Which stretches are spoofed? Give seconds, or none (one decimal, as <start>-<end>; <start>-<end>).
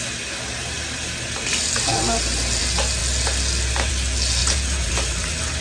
4.4-4.9